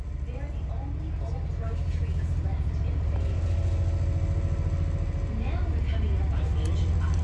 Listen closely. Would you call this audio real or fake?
real